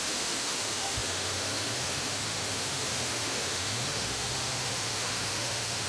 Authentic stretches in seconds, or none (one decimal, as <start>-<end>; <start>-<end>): none